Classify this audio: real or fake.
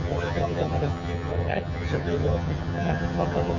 fake